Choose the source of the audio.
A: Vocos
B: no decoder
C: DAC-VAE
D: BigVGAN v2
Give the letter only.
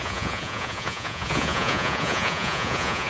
A